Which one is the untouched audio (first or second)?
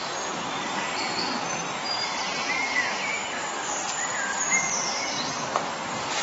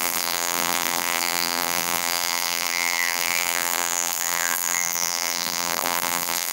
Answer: first